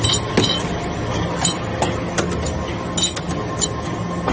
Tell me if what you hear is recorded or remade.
recorded